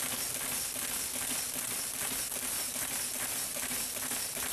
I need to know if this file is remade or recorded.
recorded